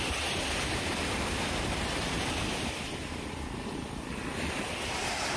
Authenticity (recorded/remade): remade